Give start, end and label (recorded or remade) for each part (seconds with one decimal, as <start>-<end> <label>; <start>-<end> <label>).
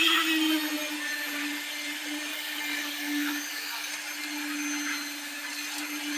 0.0-2.3 recorded; 2.3-3.9 remade; 3.9-6.2 recorded